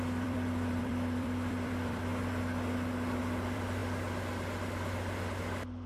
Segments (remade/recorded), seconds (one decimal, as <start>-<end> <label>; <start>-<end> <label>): 0.0-2.1 remade; 2.1-3.2 recorded; 3.2-3.8 remade; 3.8-5.9 recorded